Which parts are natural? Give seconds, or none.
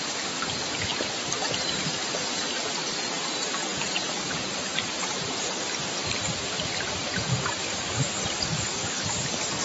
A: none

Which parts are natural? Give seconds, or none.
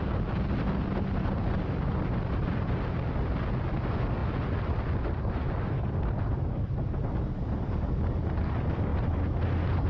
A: 0.0-9.9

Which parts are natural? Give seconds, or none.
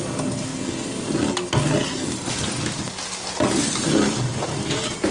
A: 0.5-3.6; 4.3-5.1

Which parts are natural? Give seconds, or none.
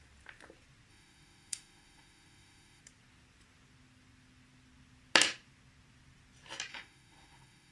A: 0.0-0.9; 2.8-6.7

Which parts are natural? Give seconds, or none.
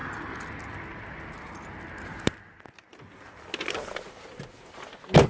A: 1.0-2.9; 4.4-5.3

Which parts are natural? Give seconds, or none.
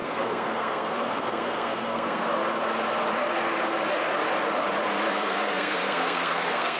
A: 2.4-5.1